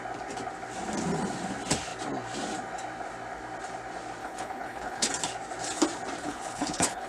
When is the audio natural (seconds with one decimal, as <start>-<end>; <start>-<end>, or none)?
0.0-4.2; 5.1-6.2